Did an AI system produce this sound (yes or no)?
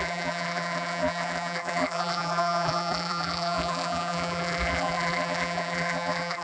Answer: yes